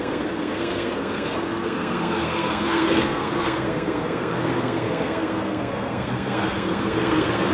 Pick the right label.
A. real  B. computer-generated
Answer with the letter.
B